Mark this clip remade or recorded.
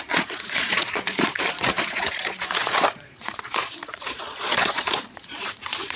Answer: remade